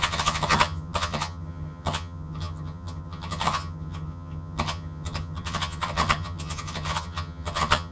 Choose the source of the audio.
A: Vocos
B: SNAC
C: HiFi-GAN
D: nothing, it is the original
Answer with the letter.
C